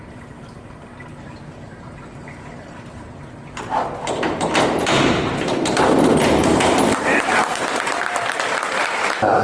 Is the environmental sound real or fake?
fake